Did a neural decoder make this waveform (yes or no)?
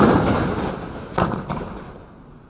yes